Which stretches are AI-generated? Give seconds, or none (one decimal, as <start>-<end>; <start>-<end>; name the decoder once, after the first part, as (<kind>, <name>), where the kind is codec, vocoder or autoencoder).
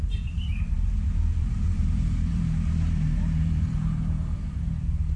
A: 0.0-5.2 (vocoder, BigVGAN v2)